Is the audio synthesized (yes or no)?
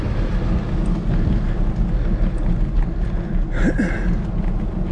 no